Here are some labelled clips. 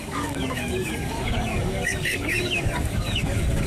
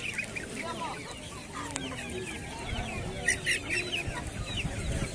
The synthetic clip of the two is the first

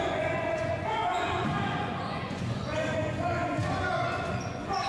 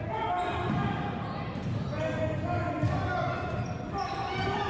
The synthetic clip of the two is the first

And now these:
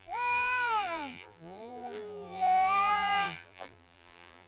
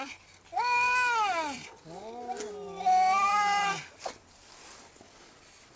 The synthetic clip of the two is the first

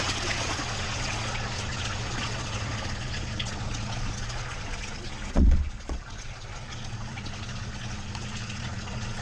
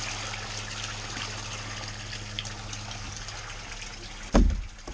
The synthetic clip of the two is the first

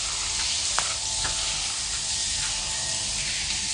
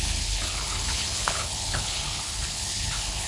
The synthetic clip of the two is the second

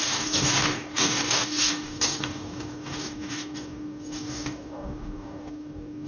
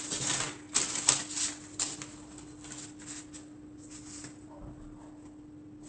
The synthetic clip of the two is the first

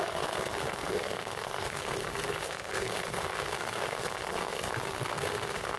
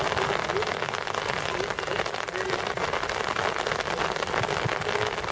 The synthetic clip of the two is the first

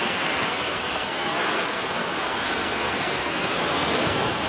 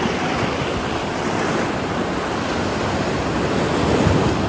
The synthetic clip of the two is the first